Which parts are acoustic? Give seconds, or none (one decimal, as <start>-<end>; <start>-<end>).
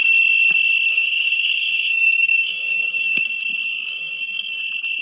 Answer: 0.0-0.9; 3.4-3.9; 4.6-5.0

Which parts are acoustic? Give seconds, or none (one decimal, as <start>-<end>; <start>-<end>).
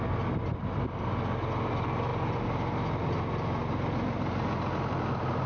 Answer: 0.0-5.5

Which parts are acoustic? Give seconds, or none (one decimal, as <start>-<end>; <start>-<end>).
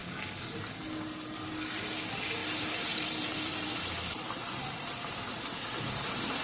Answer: 0.0-2.4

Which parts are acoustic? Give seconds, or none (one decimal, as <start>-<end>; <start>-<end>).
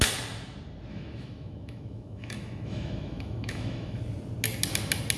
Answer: 0.0-0.9; 4.0-5.2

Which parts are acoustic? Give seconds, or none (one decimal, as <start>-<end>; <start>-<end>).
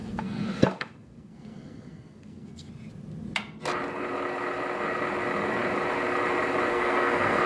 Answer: 2.7-6.7